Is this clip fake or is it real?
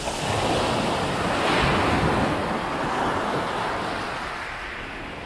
real